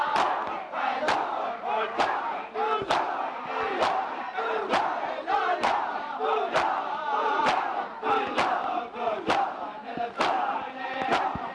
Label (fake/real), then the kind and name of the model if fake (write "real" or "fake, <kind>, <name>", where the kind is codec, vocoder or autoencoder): real